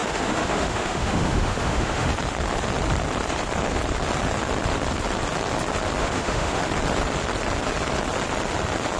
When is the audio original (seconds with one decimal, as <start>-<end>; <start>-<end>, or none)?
2.1-6.0; 6.6-9.0